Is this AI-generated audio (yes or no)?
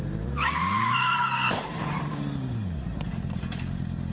yes